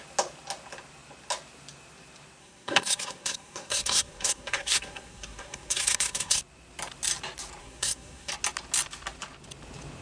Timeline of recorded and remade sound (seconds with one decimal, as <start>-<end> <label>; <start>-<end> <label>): 0.0-2.4 recorded; 2.4-6.4 remade; 6.4-7.6 recorded; 7.6-8.3 remade; 8.3-10.0 recorded